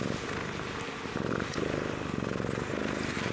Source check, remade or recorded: recorded